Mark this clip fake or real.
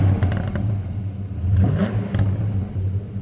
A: real